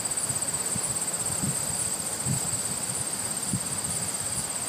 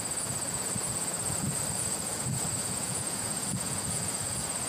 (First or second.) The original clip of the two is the first